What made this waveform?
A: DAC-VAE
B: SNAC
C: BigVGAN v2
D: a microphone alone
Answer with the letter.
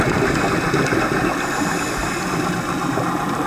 D